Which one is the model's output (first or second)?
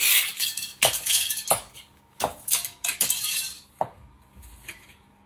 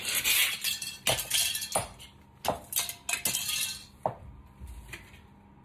first